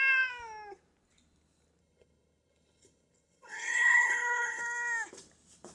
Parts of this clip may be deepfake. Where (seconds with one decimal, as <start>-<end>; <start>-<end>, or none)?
1.8-4.6